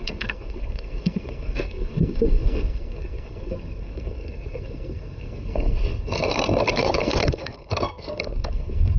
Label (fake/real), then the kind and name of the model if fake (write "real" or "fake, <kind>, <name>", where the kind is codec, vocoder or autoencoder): fake, codec, SNAC